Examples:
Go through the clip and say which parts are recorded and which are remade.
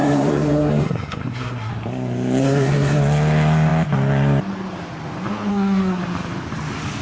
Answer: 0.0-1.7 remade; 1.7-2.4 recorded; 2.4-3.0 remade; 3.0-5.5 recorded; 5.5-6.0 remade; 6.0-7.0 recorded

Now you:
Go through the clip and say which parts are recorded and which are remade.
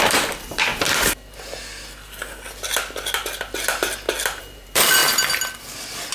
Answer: 0.0-0.7 remade; 0.7-4.4 recorded; 4.4-5.0 remade; 5.0-6.1 recorded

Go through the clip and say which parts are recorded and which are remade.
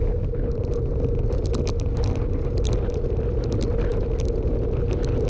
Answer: 0.0-5.3 recorded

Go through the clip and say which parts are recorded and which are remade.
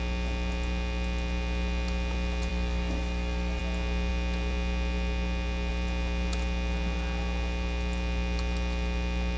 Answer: 0.0-2.5 recorded; 2.5-3.6 remade; 3.6-9.4 recorded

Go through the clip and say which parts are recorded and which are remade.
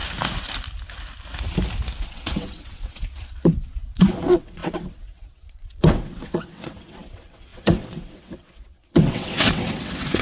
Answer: 0.0-2.0 recorded; 2.0-10.2 remade